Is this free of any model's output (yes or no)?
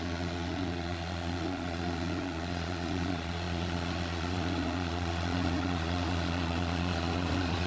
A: no